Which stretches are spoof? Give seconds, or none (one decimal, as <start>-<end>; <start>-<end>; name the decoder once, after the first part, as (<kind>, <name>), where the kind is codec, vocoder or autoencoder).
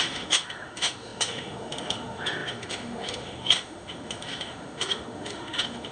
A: 0.0-5.9 (autoencoder, DAC-VAE)